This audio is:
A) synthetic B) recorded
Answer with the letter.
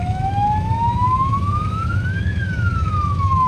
A